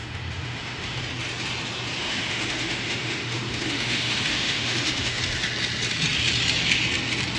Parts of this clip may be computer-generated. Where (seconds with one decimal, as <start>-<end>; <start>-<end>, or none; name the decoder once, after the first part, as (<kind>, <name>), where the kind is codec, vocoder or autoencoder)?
0.0-1.0 (autoencoder, DAC-VAE); 2.0-5.2